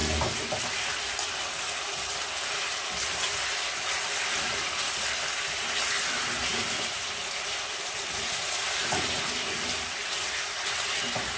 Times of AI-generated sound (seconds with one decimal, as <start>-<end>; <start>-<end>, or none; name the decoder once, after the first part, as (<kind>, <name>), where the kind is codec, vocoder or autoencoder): none